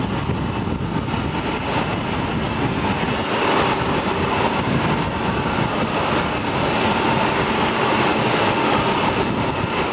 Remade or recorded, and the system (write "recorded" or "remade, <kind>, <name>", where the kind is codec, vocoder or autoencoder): recorded